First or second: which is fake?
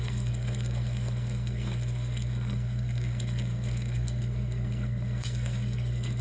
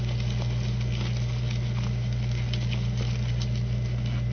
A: first